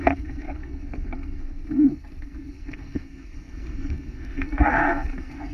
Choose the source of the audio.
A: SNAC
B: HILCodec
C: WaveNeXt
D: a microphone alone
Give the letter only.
A